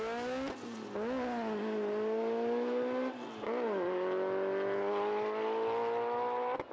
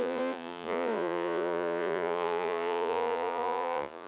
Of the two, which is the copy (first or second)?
second